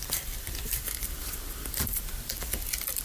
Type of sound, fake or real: fake